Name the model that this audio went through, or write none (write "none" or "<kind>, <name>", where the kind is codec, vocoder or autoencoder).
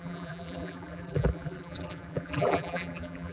vocoder, BigVGAN v2